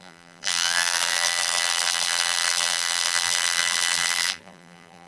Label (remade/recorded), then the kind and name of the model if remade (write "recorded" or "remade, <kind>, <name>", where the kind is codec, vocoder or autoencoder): remade, vocoder, BigVGAN v2